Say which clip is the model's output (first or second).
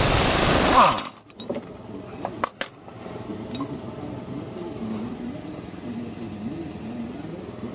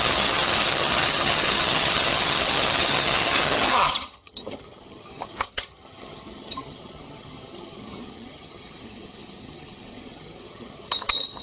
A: second